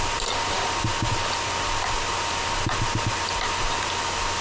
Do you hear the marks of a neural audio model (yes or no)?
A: no